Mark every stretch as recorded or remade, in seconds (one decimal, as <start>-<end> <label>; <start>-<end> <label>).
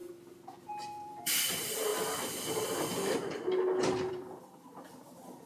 0.0-0.6 recorded; 0.6-1.9 remade; 1.9-4.1 recorded; 4.1-5.5 remade